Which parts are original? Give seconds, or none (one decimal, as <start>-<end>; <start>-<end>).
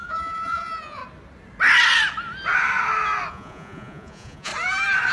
1.0-3.3; 4.5-5.1